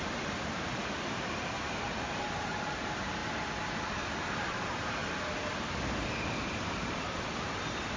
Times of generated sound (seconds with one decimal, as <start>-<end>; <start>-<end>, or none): 0.0-3.2; 3.8-5.0; 5.8-8.0